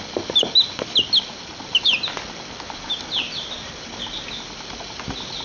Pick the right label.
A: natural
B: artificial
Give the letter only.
A